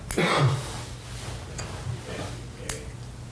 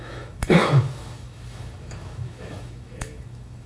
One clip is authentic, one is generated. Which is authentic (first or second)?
first